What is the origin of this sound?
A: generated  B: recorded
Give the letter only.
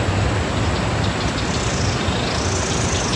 B